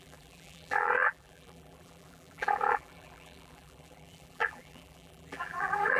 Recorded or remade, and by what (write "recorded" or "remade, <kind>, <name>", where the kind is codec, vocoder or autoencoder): remade, vocoder, BigVGAN v2